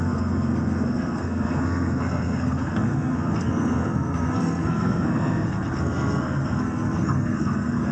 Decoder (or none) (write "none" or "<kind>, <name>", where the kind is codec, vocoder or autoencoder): codec, SNAC